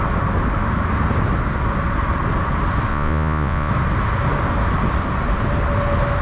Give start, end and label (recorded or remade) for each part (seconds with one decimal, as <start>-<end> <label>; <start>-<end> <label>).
0.0-2.9 recorded; 2.9-3.7 remade; 3.7-6.2 recorded